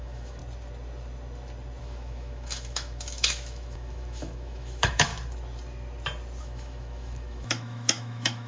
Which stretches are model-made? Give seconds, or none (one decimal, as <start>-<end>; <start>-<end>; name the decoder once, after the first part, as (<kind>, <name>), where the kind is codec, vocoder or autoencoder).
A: 0.0-0.4 (autoencoder, DAC-VAE); 1.8-5.1; 6.4-8.5